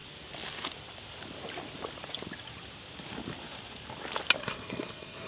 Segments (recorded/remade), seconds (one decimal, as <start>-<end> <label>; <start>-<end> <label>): 0.0-4.4 recorded; 4.4-5.3 remade